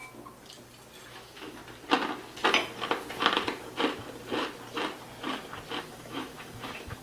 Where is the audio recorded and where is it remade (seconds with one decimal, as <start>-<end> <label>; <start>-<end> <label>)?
0.0-1.1 recorded; 1.1-1.6 remade; 1.6-5.8 recorded; 5.8-7.0 remade